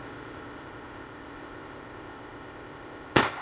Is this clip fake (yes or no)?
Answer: yes